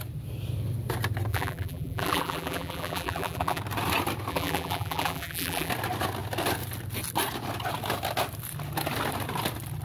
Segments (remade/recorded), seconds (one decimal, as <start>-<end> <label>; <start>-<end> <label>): 0.0-1.3 recorded; 1.3-3.6 remade; 3.6-4.3 recorded; 4.3-5.7 remade; 5.7-9.8 recorded